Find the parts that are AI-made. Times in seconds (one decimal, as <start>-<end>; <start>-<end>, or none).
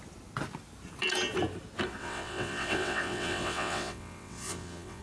2.0-5.0